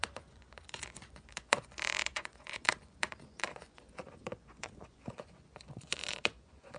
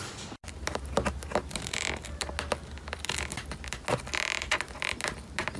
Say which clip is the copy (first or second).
first